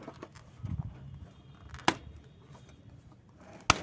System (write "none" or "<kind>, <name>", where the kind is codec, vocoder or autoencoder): none